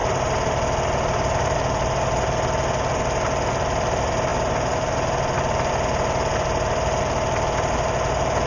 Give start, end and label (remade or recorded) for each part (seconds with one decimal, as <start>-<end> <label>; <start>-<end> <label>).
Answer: 0.0-8.5 recorded